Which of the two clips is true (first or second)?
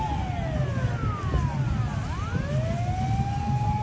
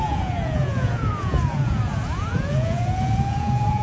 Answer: first